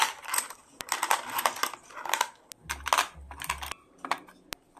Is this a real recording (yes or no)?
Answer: yes